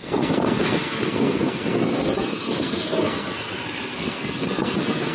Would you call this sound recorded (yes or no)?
no